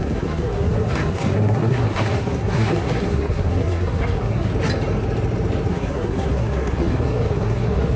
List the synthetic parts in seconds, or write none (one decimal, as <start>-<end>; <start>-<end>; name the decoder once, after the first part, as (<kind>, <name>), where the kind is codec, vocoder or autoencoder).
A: 0.0-4.5 (codec, SNAC); 5.7-8.0